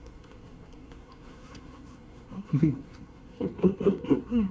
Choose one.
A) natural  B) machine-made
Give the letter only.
B